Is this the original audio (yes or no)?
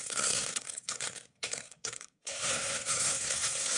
no